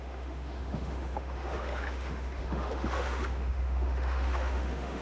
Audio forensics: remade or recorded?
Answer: remade